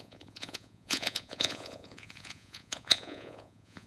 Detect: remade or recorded remade